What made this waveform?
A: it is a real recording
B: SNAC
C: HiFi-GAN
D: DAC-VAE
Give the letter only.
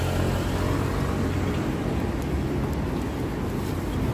A